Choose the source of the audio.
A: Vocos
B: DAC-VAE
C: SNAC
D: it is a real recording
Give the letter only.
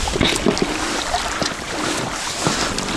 D